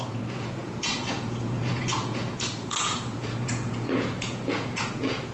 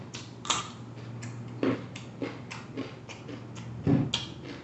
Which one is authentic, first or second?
second